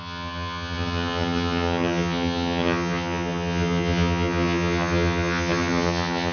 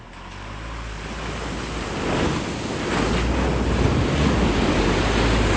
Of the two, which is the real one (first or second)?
second